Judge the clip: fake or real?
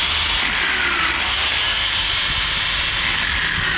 real